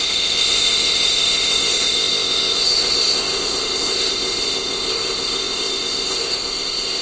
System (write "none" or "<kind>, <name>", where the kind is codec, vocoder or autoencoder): codec, ZipCodec